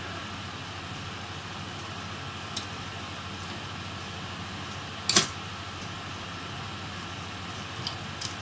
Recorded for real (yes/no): yes